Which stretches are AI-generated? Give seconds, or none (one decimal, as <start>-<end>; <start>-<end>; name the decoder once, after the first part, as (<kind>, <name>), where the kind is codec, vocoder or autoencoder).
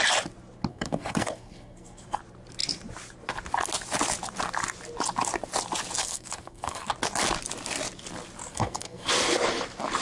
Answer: 0.7-2.2 (codec, SNAC); 6.0-6.9; 8.5-9.1